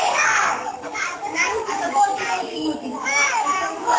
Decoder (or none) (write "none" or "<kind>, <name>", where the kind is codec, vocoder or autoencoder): codec, DAC